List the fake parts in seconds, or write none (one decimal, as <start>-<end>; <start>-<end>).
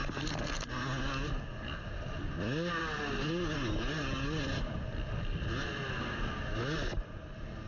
none